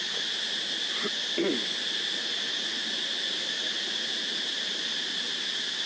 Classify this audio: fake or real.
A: real